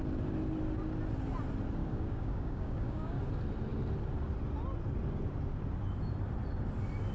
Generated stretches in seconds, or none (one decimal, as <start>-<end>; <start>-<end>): 1.8-3.2